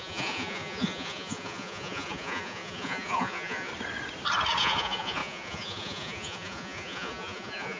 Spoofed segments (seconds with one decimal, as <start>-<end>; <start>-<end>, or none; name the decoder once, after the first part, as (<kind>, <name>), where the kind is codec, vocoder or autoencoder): 0.0-3.7 (vocoder, Vocos); 4.6-7.8